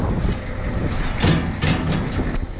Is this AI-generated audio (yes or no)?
no